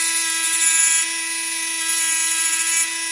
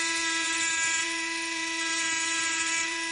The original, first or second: first